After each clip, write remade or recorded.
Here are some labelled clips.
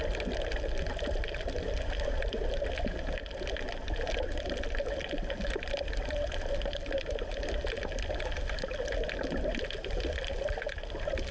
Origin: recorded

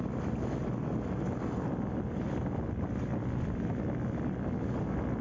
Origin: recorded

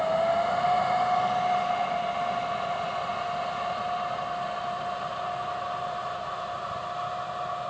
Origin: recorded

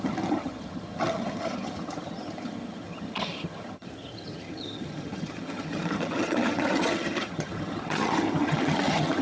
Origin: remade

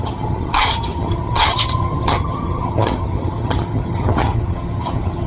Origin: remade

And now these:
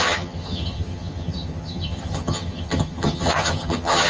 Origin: remade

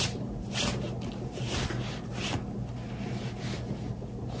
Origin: recorded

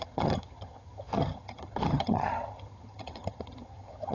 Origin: remade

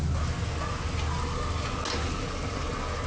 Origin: recorded